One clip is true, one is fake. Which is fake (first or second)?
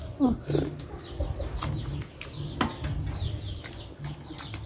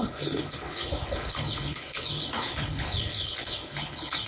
second